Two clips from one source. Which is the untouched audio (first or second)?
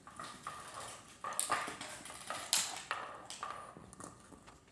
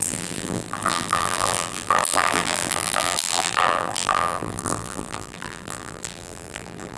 first